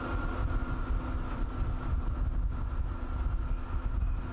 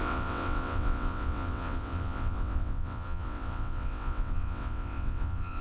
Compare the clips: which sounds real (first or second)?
first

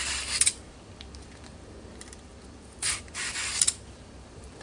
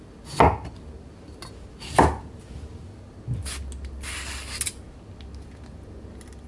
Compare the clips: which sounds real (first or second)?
second